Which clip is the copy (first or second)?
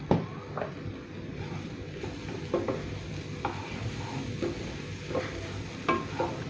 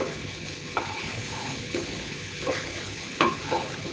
second